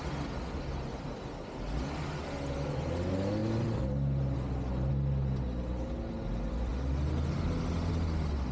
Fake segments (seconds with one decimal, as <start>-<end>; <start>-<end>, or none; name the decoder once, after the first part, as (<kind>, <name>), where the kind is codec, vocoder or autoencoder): none